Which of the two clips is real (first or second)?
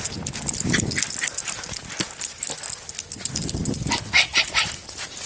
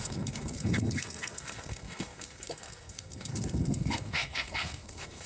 first